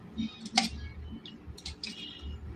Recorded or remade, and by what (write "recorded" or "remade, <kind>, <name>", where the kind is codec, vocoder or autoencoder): recorded